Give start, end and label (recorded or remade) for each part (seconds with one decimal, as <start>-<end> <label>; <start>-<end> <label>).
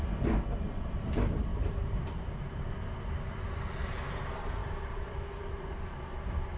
0.0-1.5 recorded; 1.5-3.0 remade; 3.0-4.6 recorded; 4.6-6.0 remade; 6.0-6.6 recorded